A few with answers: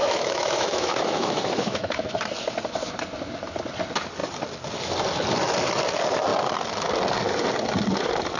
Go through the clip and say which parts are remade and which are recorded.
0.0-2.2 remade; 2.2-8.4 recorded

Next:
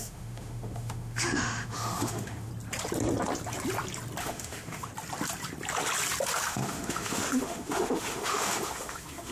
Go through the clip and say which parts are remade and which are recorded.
0.0-2.5 remade; 2.5-4.2 recorded; 4.2-4.9 remade; 4.9-6.5 recorded; 6.5-9.3 remade

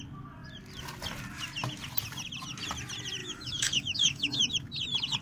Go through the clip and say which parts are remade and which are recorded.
0.0-3.2 recorded; 3.2-4.5 remade; 4.5-5.2 recorded

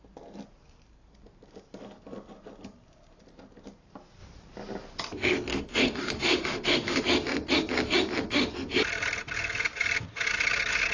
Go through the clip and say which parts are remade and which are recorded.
0.0-5.5 recorded; 5.5-7.0 remade; 7.0-10.9 recorded

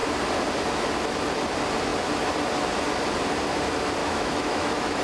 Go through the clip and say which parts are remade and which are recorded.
0.0-4.0 recorded; 4.0-5.0 remade

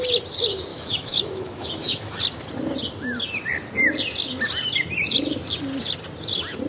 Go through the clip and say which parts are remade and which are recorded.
0.0-0.7 recorded; 0.7-2.2 remade; 2.2-6.7 recorded

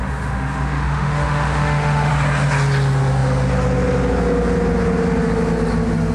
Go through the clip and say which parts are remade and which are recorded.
0.0-2.1 remade; 2.1-6.1 recorded

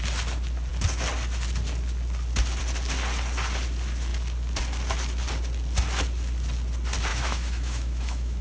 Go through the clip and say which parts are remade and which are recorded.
0.0-7.1 recorded; 7.1-8.4 remade